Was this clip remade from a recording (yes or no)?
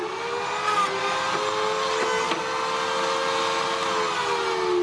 no